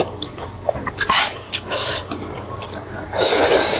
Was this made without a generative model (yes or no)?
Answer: no